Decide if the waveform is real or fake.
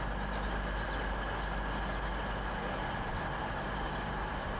real